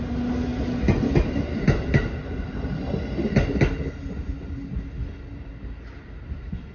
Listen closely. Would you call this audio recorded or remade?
recorded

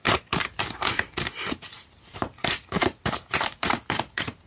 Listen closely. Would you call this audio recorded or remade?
remade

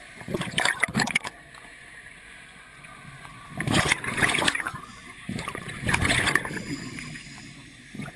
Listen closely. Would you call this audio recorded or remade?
remade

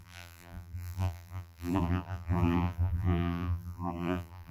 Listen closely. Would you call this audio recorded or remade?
remade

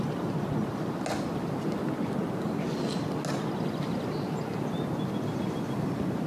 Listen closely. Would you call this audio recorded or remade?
recorded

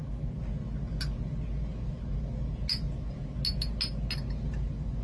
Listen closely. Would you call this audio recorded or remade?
recorded